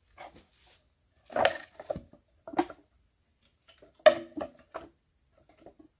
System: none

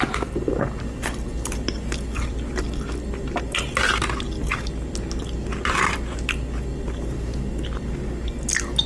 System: none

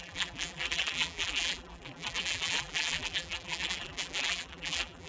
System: vocoder, BigVGAN v2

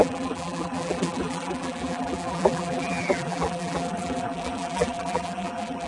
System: vocoder, BigVGAN v2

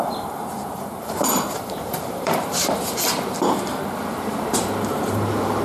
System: vocoder, BigVGAN v2